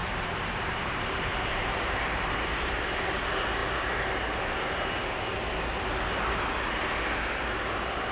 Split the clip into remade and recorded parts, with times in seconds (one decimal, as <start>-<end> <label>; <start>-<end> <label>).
0.0-2.8 remade; 2.8-8.1 recorded